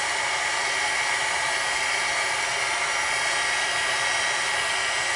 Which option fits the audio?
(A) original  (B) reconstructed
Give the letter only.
A